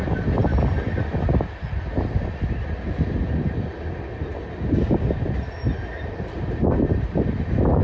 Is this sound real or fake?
real